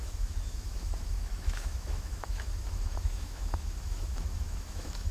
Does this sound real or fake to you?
fake